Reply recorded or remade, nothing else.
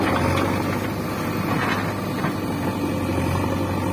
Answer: recorded